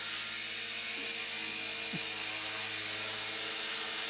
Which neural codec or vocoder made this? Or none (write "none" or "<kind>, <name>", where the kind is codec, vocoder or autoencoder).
none